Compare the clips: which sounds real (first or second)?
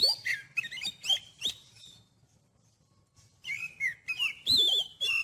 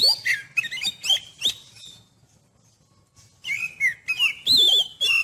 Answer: second